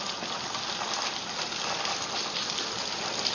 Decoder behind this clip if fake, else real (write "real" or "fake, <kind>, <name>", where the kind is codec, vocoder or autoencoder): real